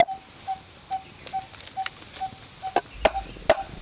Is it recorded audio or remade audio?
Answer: recorded